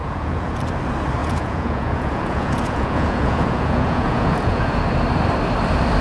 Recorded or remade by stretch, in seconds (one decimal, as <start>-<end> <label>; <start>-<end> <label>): 0.0-0.6 remade; 0.6-1.2 recorded; 1.2-4.8 remade; 4.8-6.0 recorded